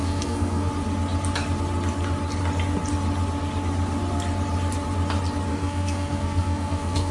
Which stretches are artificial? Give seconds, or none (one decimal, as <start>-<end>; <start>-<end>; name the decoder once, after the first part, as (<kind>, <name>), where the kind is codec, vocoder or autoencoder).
0.0-0.7 (codec, SNAC); 5.5-7.1